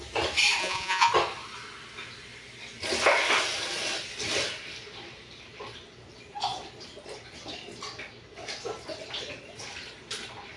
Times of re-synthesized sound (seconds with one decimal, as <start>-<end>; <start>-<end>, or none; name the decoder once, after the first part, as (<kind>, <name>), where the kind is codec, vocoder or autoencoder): 0.6-1.1 (vocoder, Vocos)